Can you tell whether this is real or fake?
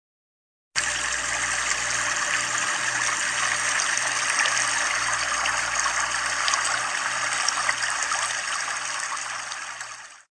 real